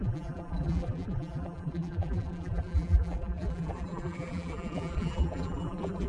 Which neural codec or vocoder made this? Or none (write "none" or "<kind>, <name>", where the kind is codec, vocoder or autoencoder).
vocoder, BigVGAN v2